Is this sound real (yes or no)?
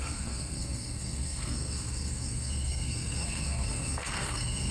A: no